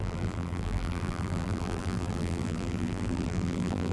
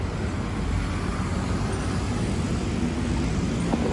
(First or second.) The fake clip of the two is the first